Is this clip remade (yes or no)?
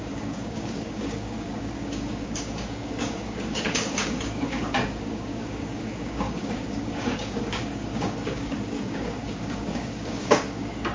yes